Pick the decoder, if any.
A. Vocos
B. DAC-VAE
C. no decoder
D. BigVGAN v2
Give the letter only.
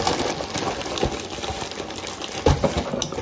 C